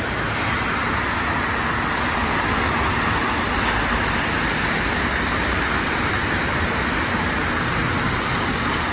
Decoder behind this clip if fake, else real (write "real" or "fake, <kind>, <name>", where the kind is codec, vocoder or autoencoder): real